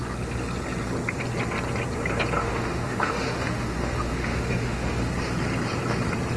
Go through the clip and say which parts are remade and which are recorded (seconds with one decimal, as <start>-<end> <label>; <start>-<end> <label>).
0.0-2.4 recorded; 2.4-5.1 remade; 5.1-6.4 recorded